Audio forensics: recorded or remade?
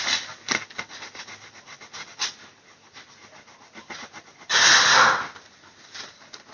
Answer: recorded